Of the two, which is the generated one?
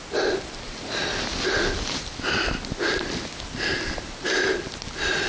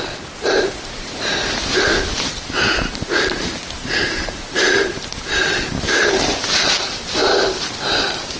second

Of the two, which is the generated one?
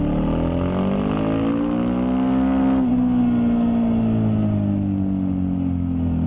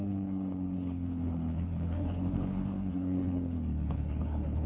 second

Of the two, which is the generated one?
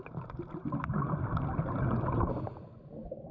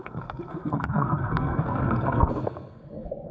second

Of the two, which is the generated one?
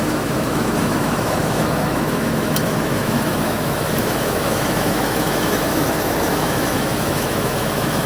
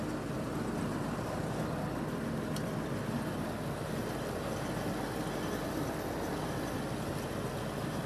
first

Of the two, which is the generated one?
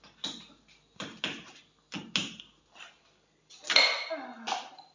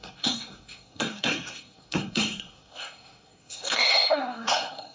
second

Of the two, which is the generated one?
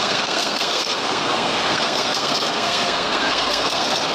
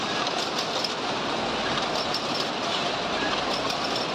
first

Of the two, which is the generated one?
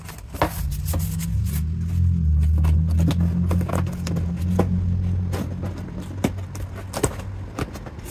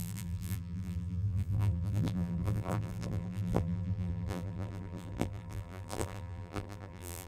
second